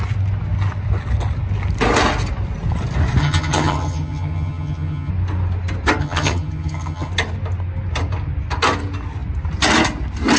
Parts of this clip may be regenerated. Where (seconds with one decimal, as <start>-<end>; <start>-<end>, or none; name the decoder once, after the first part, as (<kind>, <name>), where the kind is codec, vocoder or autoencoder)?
3.2-5.1 (vocoder, HiFi-GAN); 6.0-7.1